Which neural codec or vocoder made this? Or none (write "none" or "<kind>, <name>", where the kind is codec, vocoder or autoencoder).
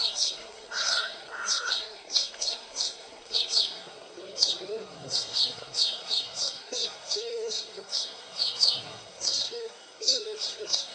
codec, SNAC